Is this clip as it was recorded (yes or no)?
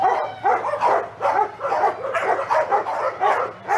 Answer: yes